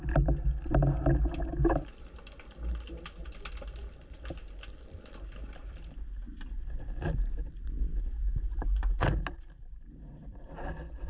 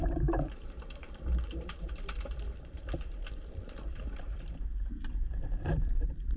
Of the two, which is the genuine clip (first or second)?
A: first